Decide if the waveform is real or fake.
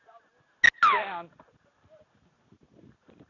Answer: real